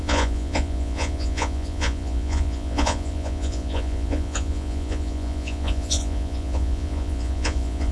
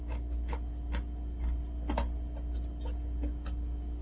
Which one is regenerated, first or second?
first